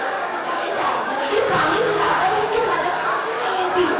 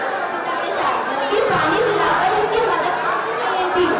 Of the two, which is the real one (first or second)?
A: second